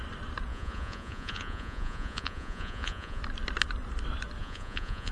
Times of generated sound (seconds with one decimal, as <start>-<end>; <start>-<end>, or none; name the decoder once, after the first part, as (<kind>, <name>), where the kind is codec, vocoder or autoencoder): 0.5-3.2 (vocoder, Vocos); 4.4-5.1